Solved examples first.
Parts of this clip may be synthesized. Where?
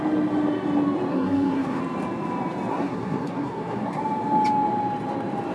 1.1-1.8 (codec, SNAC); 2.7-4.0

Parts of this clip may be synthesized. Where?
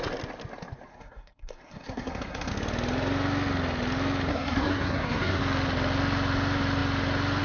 0.9-2.5 (codec, SNAC); 4.3-5.4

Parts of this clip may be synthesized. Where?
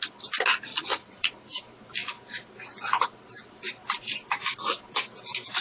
0.7-1.3 (vocoder, Vocos)